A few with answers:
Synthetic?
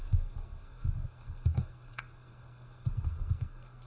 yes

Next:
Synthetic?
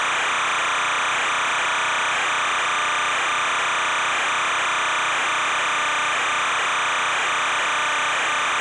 no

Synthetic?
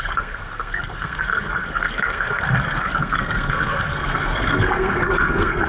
yes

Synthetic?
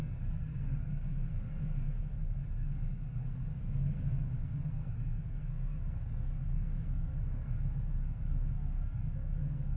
yes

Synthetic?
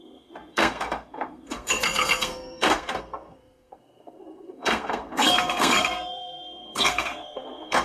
yes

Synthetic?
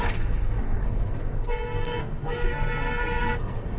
yes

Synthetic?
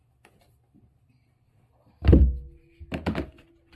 no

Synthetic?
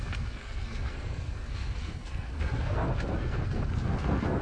yes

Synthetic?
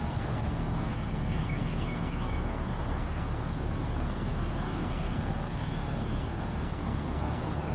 yes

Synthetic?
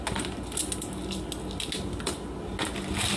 no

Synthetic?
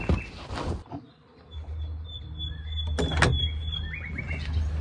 no